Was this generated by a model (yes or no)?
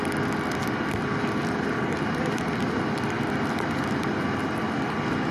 no